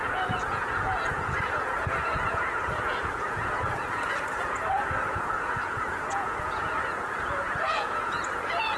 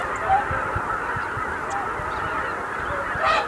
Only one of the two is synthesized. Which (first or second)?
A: first